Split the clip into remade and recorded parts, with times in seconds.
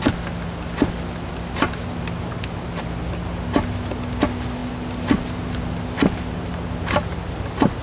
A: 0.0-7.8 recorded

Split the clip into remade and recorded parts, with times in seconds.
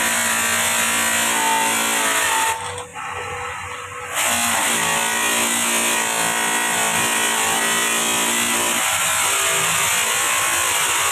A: 0.0-11.1 recorded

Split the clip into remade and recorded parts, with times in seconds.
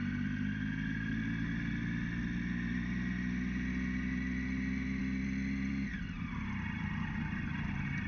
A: 0.0-8.1 recorded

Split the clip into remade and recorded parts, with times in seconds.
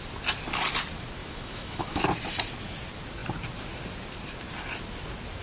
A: 0.0-1.2 recorded; 1.2-2.0 remade; 2.0-5.4 recorded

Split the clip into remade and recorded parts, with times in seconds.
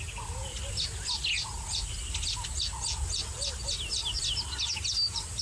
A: 0.0-5.4 recorded